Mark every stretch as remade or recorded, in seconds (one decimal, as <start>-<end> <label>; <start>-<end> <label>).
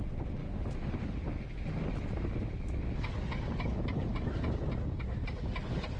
0.0-6.0 recorded